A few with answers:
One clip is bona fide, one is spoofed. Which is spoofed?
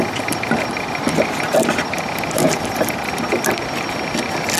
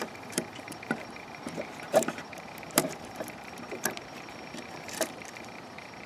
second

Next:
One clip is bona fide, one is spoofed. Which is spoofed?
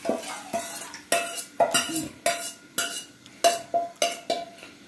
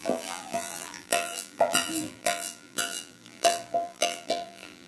second